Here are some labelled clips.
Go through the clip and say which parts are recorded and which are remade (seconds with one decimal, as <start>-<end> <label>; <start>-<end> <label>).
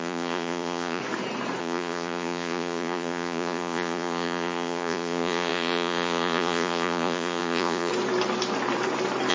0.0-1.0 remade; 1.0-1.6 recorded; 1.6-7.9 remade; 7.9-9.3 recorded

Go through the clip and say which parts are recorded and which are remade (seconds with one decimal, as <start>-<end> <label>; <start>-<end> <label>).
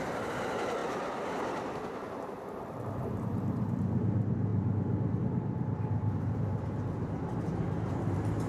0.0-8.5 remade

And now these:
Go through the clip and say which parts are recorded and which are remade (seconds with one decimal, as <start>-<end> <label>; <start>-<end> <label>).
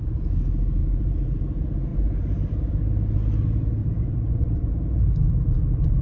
0.0-0.8 recorded; 0.8-1.4 remade; 1.4-1.9 recorded; 1.9-2.8 remade; 2.8-3.8 recorded; 3.8-4.7 remade; 4.7-6.0 recorded